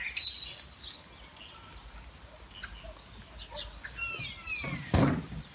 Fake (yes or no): no